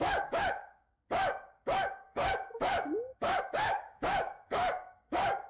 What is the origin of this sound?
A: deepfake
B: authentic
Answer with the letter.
A